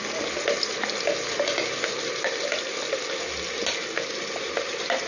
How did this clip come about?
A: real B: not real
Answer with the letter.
A